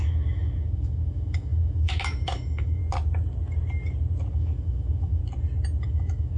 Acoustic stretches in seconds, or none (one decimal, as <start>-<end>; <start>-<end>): 2.8-4.3; 5.2-5.8

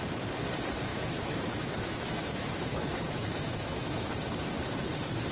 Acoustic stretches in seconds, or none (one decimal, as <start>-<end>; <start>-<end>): 0.0-0.9; 4.1-5.3

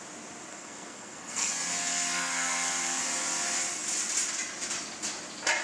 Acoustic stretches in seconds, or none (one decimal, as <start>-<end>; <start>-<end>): 0.0-0.5; 1.5-1.9; 3.0-5.6

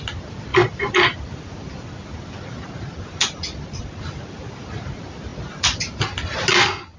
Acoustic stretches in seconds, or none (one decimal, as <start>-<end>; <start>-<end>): 0.0-7.0

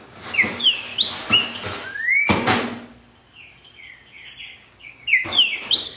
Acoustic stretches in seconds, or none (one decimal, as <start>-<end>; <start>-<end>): 0.9-4.4